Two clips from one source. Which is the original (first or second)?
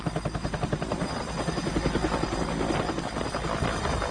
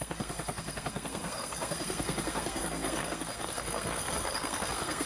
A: first